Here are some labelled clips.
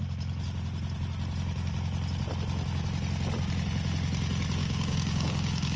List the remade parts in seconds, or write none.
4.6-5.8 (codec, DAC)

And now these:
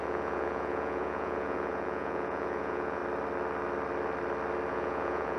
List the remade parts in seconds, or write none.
0.0-3.0 (vocoder, Vocos); 4.7-5.4

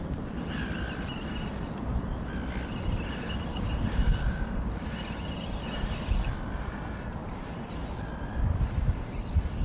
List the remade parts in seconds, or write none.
3.5-4.7 (codec, DAC)

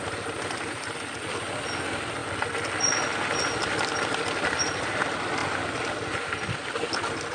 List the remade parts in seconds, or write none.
none

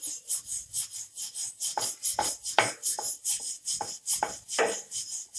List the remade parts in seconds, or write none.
none

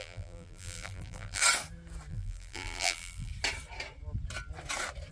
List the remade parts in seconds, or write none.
0.0-1.4 (vocoder, BigVGAN v2); 2.1-3.3

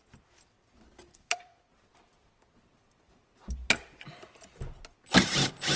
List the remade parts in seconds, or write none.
1.1-1.7 (codec, SNAC)

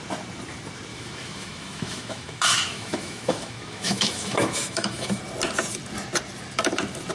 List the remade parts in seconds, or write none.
0.9-5.2 (autoencoder, DAC-VAE)